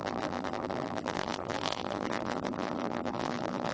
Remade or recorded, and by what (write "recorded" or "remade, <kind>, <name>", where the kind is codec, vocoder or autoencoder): remade, vocoder, BigVGAN v2